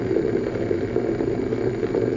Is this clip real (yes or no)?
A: yes